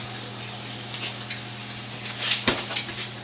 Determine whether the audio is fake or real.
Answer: real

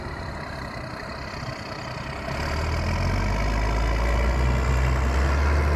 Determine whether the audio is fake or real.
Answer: real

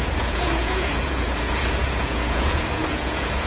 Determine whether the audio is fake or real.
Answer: fake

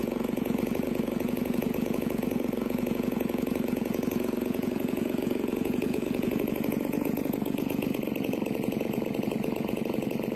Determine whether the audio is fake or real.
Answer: fake